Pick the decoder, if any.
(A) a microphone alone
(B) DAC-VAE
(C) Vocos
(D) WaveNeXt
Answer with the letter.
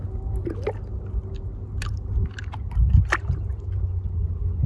A